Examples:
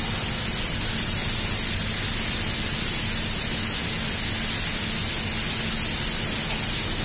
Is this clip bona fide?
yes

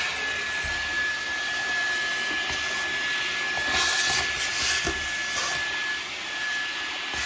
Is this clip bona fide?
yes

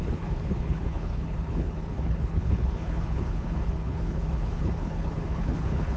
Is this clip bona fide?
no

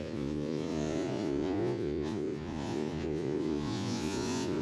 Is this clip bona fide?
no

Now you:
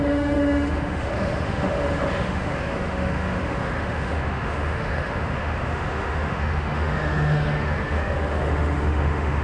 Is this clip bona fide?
no